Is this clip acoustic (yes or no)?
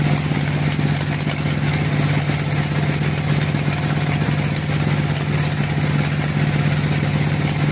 yes